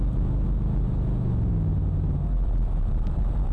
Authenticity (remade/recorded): recorded